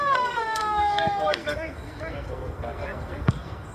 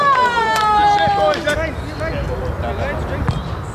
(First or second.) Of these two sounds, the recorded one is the second